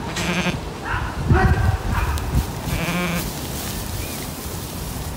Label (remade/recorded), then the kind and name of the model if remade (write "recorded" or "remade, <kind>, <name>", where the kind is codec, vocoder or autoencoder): recorded